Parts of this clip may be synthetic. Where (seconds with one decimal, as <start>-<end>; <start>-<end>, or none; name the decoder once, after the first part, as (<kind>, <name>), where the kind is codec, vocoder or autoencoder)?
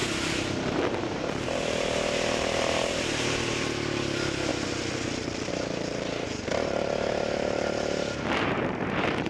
0.0-4.5 (vocoder, BigVGAN v2); 5.5-9.3